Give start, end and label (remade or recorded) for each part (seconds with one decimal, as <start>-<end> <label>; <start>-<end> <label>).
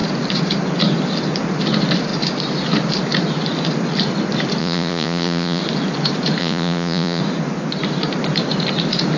0.0-4.6 recorded; 4.6-5.6 remade; 5.6-6.4 recorded; 6.4-7.2 remade; 7.2-9.2 recorded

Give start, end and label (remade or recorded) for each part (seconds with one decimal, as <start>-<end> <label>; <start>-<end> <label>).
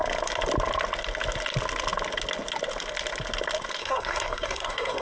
0.0-3.8 recorded; 3.8-5.0 remade